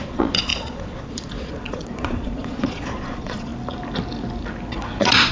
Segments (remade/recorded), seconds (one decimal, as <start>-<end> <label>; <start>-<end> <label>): 0.0-3.5 remade; 3.5-4.7 recorded; 4.7-5.3 remade